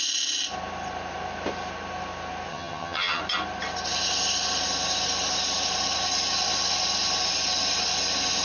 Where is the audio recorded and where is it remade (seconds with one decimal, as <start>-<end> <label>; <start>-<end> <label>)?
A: 0.0-2.5 recorded; 2.5-3.2 remade; 3.2-8.4 recorded